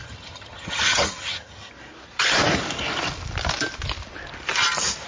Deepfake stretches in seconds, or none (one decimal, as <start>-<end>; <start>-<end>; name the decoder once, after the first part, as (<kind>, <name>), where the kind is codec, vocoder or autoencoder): 0.0-1.7 (vocoder, HiFi-GAN)